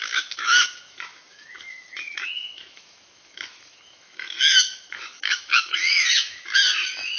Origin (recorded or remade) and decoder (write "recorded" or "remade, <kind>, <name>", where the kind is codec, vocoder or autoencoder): remade, autoencoder, DAC-VAE